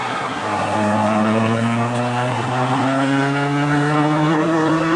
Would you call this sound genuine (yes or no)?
no